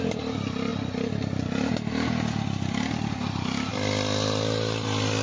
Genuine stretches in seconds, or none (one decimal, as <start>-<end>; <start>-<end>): 0.0-5.2